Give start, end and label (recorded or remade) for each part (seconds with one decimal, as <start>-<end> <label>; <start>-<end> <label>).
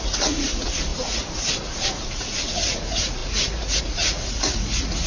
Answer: 0.0-5.1 remade